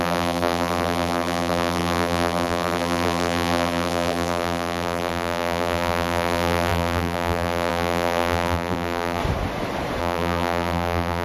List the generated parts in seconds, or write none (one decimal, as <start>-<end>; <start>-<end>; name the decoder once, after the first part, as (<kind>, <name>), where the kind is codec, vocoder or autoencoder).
0.0-9.2 (vocoder, BigVGAN v2); 10.0-11.2